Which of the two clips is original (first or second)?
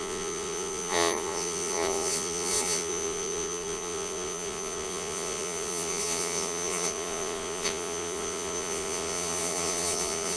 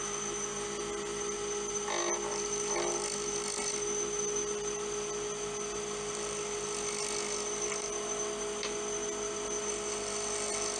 second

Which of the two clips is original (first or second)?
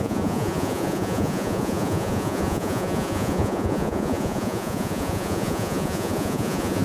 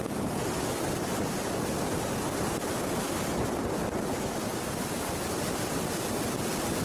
second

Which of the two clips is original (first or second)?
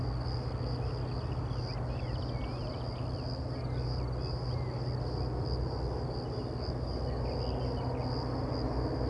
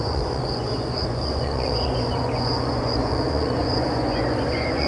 first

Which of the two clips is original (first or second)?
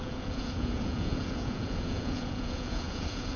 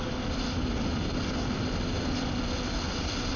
second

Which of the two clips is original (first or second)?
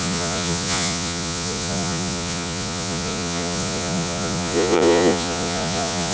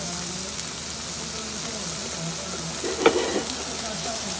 second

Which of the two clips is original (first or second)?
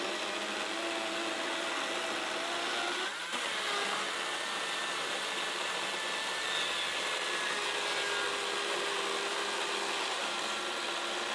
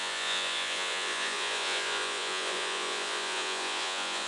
first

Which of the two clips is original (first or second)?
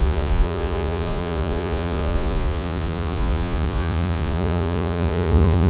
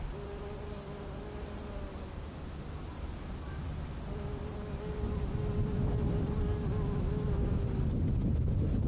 second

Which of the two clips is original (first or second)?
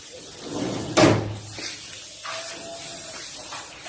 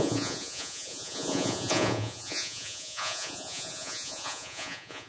first